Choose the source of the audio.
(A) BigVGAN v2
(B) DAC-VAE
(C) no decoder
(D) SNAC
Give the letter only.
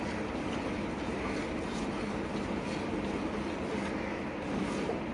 C